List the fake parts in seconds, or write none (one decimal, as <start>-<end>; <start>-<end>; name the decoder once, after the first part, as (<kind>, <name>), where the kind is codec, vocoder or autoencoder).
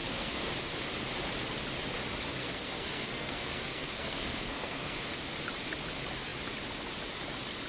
0.0-0.5 (codec, SNAC); 2.4-5.0